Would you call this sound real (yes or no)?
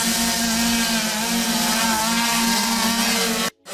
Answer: yes